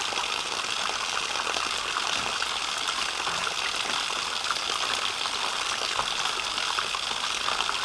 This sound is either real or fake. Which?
real